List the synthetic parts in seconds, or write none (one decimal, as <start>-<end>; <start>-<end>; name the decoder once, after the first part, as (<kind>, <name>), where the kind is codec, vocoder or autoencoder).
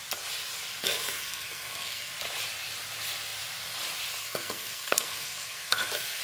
0.8-2.1 (codec, SNAC); 4.2-6.2